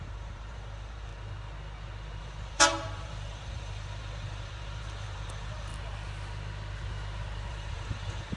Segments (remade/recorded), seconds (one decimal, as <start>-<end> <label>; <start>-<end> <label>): 0.0-1.1 remade; 1.1-2.2 recorded; 2.2-5.7 remade; 5.7-7.5 recorded; 7.5-8.4 remade